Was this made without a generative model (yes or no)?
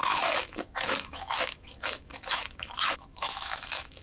no